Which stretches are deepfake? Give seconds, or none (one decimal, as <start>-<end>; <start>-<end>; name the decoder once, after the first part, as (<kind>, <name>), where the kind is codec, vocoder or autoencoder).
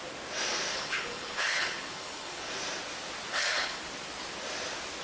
0.7-2.5 (codec, HILCodec); 3.3-3.8